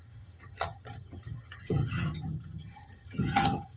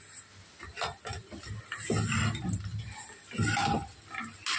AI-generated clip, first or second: first